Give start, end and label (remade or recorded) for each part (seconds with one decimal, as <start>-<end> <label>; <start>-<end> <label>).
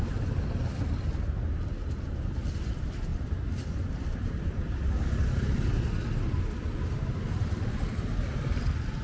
0.0-9.0 recorded